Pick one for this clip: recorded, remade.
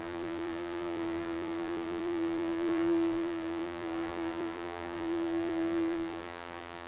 remade